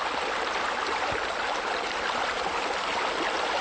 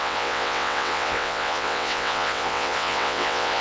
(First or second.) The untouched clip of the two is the first